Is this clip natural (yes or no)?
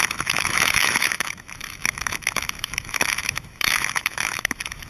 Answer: no